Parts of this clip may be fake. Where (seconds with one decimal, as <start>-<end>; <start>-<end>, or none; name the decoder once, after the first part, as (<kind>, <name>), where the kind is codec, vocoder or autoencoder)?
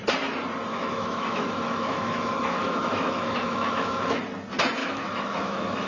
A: 0.7-4.2 (autoencoder, DAC-VAE); 4.8-5.9